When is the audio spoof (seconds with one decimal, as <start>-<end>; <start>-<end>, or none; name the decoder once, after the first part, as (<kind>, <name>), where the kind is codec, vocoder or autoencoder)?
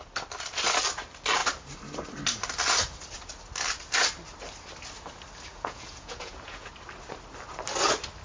5.5-6.7 (vocoder, Vocos)